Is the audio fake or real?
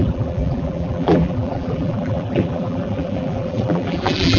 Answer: fake